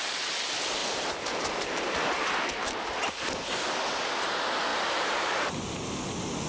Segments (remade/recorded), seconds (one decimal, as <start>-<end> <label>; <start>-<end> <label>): 0.0-4.7 recorded; 4.7-5.6 remade; 5.6-6.5 recorded